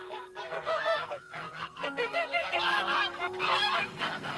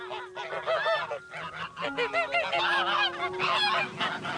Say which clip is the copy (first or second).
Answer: first